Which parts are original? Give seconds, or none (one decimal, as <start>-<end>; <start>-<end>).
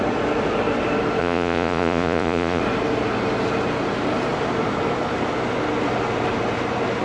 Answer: 0.0-1.2; 2.6-7.0